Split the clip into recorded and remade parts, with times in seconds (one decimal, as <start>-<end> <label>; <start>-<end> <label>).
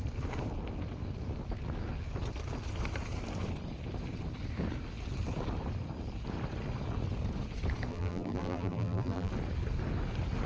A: 0.0-7.9 recorded; 7.9-9.3 remade; 9.3-10.5 recorded